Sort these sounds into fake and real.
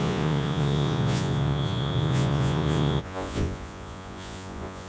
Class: fake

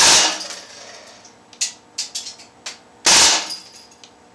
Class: real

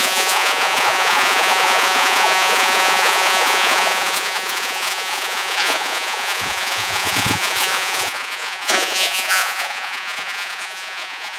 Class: fake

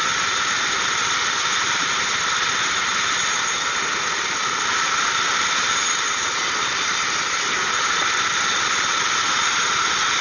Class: real